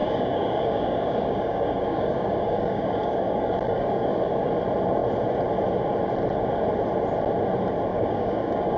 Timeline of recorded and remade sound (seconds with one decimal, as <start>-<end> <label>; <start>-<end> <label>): 0.0-4.5 remade; 4.5-7.9 recorded; 7.9-8.8 remade